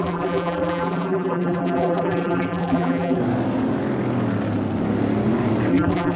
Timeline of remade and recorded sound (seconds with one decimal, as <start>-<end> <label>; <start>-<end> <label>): 0.0-3.2 remade; 3.2-5.7 recorded; 5.7-6.2 remade

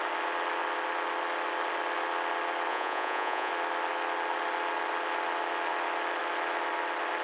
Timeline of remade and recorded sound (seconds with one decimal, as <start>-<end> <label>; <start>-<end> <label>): 0.0-2.7 recorded; 2.7-3.5 remade; 3.5-7.2 recorded

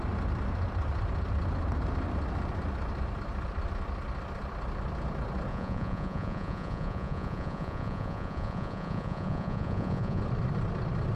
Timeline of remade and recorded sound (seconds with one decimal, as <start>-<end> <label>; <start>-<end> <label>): 0.0-5.5 recorded; 5.5-10.2 remade; 10.2-11.2 recorded

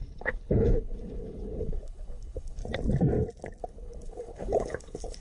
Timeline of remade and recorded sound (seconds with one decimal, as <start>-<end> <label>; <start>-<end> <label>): 0.0-2.6 remade; 2.6-3.6 recorded; 3.6-5.2 remade

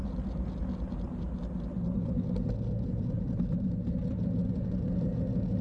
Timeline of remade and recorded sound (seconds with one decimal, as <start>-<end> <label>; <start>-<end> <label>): 0.0-5.6 recorded

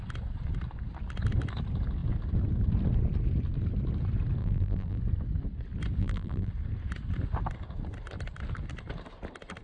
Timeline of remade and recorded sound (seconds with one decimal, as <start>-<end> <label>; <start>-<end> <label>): 0.0-4.4 recorded; 4.4-5.0 remade; 5.0-6.0 recorded; 6.0-6.5 remade; 6.5-9.6 recorded

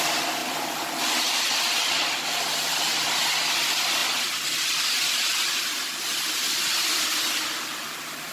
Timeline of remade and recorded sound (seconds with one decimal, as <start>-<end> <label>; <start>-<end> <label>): 0.0-2.9 remade; 2.9-3.5 recorded; 3.5-4.0 remade; 4.0-4.7 recorded; 4.7-8.3 remade